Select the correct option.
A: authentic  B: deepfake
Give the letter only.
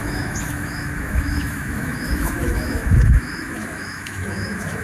B